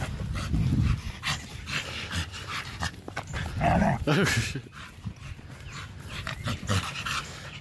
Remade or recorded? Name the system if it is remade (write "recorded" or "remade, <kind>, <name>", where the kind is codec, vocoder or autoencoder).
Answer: recorded